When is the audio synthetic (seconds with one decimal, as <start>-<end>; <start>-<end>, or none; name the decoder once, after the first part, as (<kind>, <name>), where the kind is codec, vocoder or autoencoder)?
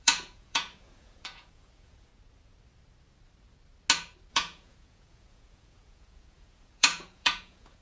0.0-2.1 (vocoder, Vocos); 4.3-7.8